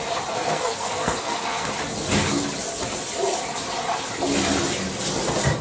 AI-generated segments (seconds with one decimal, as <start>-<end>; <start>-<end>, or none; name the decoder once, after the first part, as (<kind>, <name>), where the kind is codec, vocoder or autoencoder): 0.4-1.7 (codec, SNAC)